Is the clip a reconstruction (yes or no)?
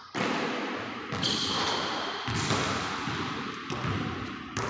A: no